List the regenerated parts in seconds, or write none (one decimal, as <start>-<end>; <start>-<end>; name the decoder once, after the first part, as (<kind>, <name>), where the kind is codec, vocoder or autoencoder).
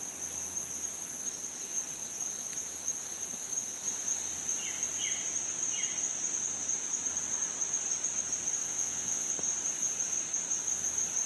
8.6-9.3 (vocoder, WaveNeXt)